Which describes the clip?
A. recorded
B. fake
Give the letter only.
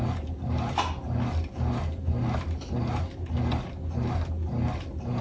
A